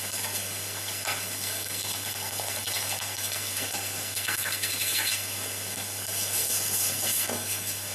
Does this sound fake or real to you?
fake